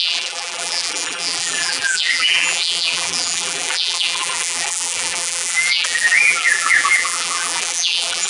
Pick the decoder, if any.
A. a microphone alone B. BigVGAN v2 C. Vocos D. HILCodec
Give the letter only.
B